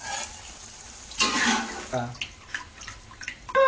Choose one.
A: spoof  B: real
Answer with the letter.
B